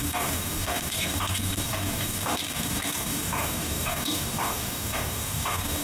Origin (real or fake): fake